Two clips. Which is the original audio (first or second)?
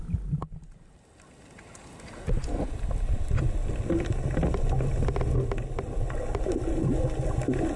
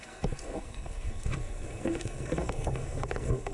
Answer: first